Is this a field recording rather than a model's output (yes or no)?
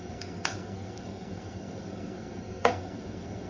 no